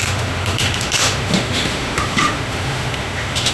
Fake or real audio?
fake